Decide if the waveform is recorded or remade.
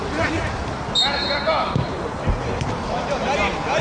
recorded